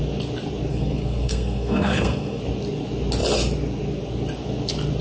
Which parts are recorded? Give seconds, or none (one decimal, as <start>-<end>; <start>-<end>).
0.0-0.7; 2.4-5.0